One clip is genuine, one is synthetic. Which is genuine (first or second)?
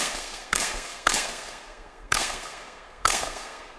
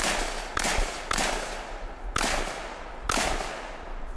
second